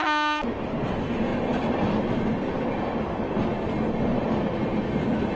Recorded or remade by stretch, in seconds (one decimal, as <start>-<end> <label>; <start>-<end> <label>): 0.0-5.3 recorded